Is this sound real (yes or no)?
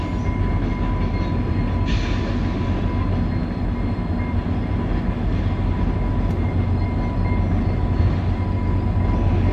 yes